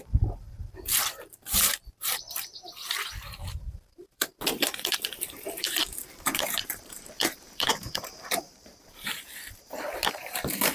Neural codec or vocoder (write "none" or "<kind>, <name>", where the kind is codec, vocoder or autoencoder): vocoder, BigVGAN v2